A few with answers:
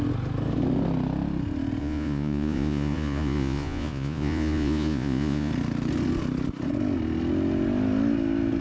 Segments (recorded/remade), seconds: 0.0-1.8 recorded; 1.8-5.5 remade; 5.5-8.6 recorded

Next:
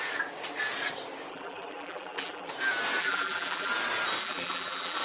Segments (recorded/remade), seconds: 0.0-1.3 recorded; 1.3-2.5 remade; 2.5-3.0 recorded; 3.0-3.7 remade; 3.7-4.2 recorded; 4.2-5.0 remade

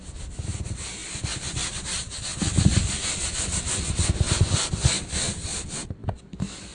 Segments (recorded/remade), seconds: 0.0-6.7 recorded

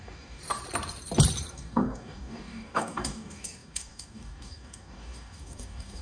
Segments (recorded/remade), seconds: 0.0-0.4 remade; 0.4-1.5 recorded; 1.5-6.0 remade

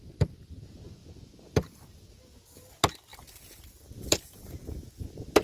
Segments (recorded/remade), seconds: 0.0-3.1 recorded; 3.1-4.5 remade; 4.5-5.4 recorded

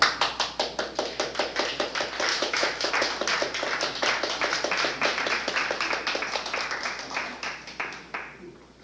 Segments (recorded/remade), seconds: 0.0-2.3 recorded; 2.3-2.9 remade; 2.9-8.8 recorded

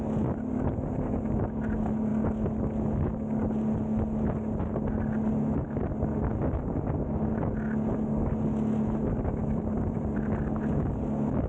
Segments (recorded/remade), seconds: 0.0-9.4 recorded; 9.4-10.3 remade; 10.3-11.5 recorded